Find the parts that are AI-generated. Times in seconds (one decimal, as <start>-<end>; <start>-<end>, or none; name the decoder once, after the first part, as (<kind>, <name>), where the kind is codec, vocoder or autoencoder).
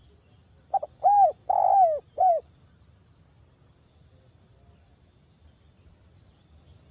0.0-0.4 (vocoder, BigVGAN v2); 2.0-6.9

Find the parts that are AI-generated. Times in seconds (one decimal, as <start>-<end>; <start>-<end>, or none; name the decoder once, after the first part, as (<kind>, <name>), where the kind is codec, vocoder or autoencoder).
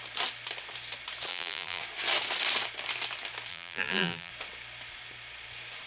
1.3-1.8 (vocoder, BigVGAN v2); 3.5-4.3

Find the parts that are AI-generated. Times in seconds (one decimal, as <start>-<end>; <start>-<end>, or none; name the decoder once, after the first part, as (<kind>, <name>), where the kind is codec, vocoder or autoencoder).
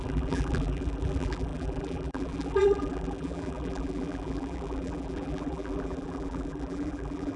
0.0-7.4 (vocoder, BigVGAN v2)